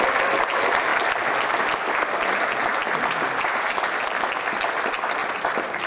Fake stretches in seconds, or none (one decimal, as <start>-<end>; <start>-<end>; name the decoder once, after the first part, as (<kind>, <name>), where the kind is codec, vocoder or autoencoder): 2.8-3.7 (vocoder, BigVGAN v2); 5.2-5.9